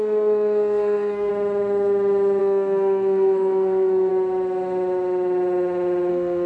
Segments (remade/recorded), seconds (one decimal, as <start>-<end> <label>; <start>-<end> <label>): 0.0-1.3 remade; 1.3-2.4 recorded; 2.4-4.1 remade; 4.1-6.1 recorded; 6.1-6.5 remade